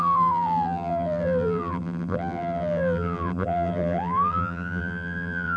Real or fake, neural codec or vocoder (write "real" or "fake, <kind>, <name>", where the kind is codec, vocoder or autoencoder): fake, vocoder, BigVGAN v2